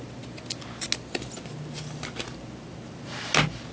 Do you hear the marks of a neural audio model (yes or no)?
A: no